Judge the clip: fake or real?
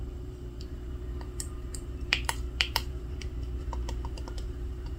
fake